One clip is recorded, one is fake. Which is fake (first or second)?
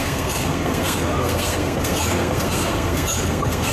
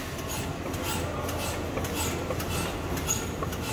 first